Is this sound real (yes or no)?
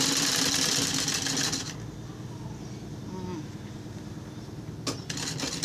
yes